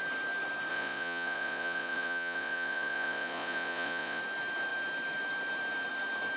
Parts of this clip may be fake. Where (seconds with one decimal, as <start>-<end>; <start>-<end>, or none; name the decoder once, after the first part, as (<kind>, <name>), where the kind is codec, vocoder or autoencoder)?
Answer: 0.7-4.2 (vocoder, Vocos)